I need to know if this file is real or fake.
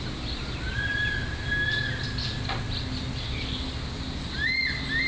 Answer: real